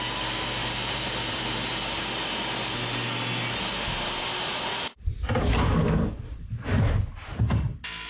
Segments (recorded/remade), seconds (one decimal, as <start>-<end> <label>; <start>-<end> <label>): 0.0-0.6 recorded; 0.6-2.0 remade; 2.0-4.3 recorded; 4.3-5.1 remade; 5.1-8.1 recorded